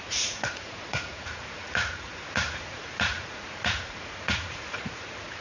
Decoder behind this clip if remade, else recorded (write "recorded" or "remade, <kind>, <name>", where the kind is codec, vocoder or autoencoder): remade, vocoder, Vocos